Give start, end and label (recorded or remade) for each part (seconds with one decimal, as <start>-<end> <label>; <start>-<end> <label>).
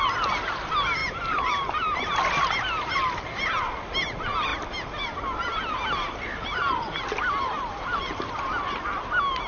0.0-1.0 recorded; 1.0-2.3 remade; 2.3-9.5 recorded